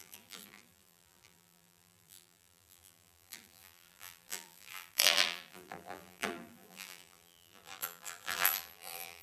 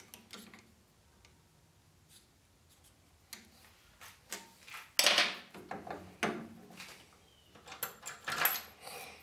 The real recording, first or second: second